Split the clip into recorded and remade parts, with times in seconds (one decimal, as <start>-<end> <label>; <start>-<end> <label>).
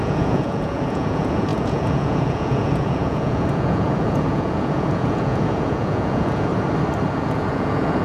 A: 0.0-6.5 remade; 6.5-7.1 recorded; 7.1-8.0 remade